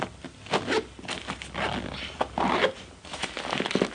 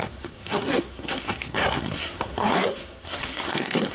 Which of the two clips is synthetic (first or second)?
second